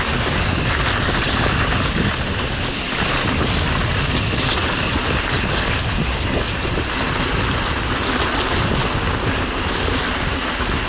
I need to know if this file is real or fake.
real